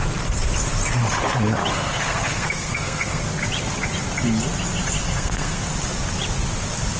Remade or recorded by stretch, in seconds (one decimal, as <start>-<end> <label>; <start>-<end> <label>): 0.0-1.7 recorded; 1.7-3.2 remade; 3.2-5.0 recorded; 5.0-5.7 remade; 5.7-7.0 recorded